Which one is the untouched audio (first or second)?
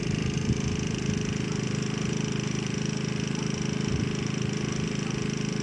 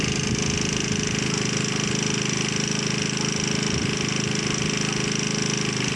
second